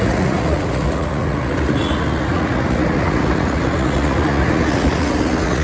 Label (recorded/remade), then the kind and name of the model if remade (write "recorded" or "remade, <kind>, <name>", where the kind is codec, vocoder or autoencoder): remade, vocoder, Vocos